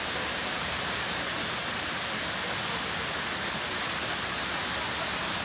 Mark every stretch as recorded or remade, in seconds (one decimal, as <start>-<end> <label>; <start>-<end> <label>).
0.0-1.6 remade; 1.6-4.1 recorded; 4.1-5.4 remade